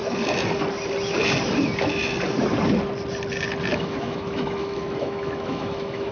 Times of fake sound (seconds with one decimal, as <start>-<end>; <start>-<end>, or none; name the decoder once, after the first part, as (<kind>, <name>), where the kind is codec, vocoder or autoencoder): 3.7-6.1 (autoencoder, DAC-VAE)